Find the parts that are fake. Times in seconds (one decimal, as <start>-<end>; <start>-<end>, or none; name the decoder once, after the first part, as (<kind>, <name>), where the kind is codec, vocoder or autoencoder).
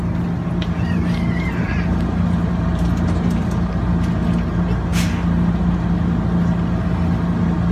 none